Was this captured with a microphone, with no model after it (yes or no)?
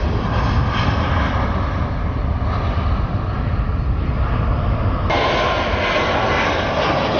yes